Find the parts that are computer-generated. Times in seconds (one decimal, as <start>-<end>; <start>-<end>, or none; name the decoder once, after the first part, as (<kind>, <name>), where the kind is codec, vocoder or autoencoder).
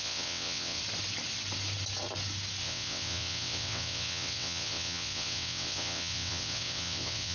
0.0-0.8 (vocoder, WaveNeXt); 2.6-7.3